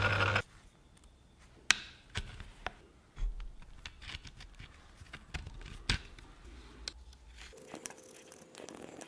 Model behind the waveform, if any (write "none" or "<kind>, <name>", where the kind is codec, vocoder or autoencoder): none